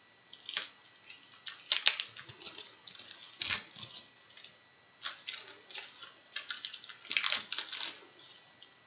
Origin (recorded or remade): recorded